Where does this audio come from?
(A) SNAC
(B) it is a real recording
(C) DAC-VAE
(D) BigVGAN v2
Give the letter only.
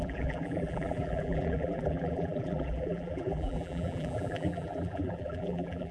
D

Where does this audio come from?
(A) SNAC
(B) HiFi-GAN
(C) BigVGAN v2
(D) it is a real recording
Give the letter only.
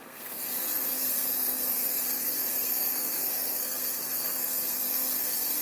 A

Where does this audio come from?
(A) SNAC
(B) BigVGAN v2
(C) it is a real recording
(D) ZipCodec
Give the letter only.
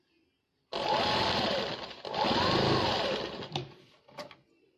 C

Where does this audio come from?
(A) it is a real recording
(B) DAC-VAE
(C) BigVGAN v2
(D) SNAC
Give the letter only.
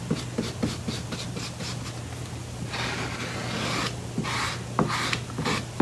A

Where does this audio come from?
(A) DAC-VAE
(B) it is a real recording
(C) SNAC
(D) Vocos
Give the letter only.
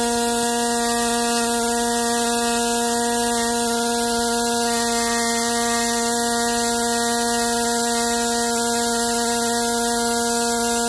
B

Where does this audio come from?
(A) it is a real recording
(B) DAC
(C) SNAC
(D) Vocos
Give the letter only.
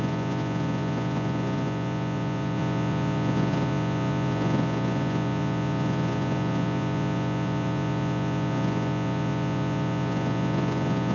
D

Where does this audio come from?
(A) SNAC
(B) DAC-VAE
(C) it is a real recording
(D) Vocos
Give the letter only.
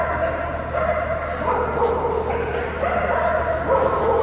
C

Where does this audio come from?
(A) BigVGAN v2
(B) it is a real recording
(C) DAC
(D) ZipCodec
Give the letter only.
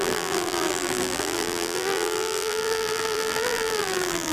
A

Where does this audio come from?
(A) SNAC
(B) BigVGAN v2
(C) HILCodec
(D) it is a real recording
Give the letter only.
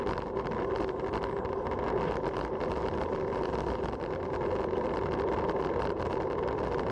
D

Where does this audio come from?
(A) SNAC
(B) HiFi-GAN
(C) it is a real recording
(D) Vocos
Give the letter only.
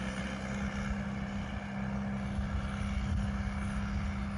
C